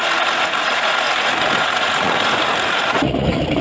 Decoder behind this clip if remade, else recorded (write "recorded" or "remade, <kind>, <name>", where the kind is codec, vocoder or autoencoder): remade, vocoder, Vocos